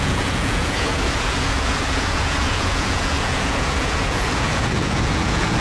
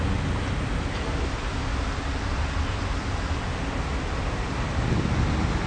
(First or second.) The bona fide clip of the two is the second